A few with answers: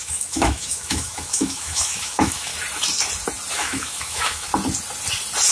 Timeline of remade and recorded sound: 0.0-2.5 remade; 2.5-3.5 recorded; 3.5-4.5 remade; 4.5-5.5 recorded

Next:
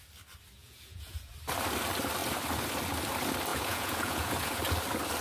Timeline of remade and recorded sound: 0.0-0.6 recorded; 0.6-1.3 remade; 1.3-3.5 recorded; 3.5-4.6 remade; 4.6-5.2 recorded

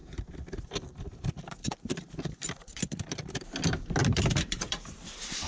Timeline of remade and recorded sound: 0.0-3.3 remade; 3.3-4.0 recorded; 4.0-5.5 remade

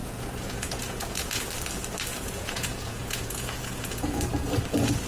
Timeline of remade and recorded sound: 0.0-1.4 remade; 1.4-2.1 recorded; 2.1-4.1 remade; 4.1-5.1 recorded

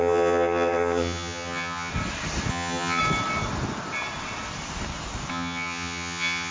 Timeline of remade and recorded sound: 0.0-1.9 remade; 1.9-2.5 recorded; 2.5-3.0 remade; 3.0-5.3 recorded; 5.3-6.5 remade

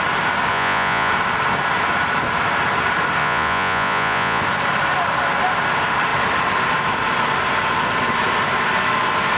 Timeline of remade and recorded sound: 0.0-0.5 recorded; 0.5-1.1 remade; 1.1-3.2 recorded; 3.2-4.4 remade; 4.4-9.4 recorded

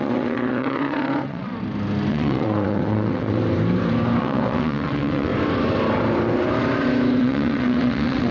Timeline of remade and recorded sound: 0.0-1.5 remade; 1.5-2.1 recorded; 2.1-3.4 remade; 3.4-4.2 recorded; 4.2-5.3 remade; 5.3-7.2 recorded; 7.2-8.3 remade